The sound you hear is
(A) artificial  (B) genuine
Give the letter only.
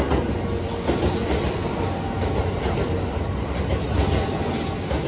B